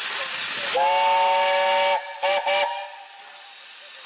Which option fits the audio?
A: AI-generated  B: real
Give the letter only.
B